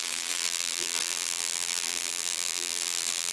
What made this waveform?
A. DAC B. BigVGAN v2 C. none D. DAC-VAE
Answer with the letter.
B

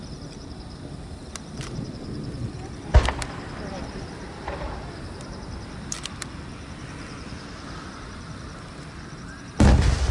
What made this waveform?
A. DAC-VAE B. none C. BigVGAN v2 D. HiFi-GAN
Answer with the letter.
C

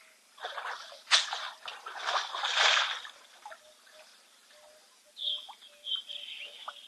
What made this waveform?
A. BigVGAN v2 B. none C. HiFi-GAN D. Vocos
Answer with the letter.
B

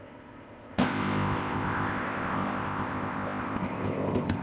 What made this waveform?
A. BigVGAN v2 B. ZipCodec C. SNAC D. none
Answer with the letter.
B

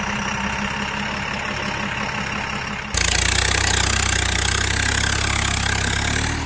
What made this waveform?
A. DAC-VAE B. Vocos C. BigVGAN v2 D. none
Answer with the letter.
D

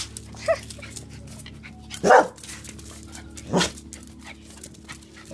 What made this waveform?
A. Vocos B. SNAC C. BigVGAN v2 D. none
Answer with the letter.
D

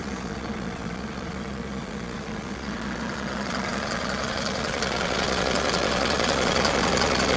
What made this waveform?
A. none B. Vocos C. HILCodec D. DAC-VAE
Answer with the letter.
B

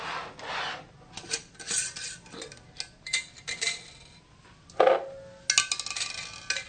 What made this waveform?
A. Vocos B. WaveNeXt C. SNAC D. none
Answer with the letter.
D